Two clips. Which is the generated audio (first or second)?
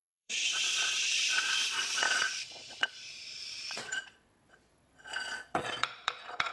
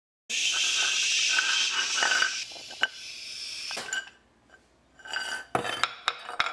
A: first